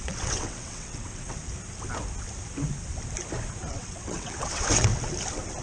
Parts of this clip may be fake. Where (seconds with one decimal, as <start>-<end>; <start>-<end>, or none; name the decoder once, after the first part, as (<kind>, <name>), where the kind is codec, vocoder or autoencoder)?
0.0-1.4 (vocoder, WaveNeXt); 3.7-4.9